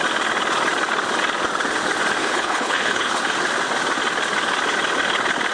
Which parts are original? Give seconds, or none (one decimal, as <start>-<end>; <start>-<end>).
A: 0.0-2.2; 3.2-5.5